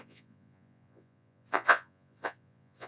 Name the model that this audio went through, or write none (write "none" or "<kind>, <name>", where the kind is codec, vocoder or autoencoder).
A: vocoder, Vocos